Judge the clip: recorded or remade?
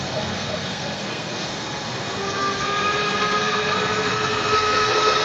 remade